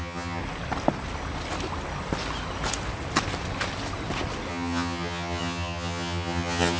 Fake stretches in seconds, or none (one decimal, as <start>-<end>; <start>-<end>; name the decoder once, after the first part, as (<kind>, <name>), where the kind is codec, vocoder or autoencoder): 0.0-0.4 (vocoder, HiFi-GAN); 4.5-6.8